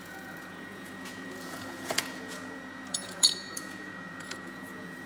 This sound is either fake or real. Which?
fake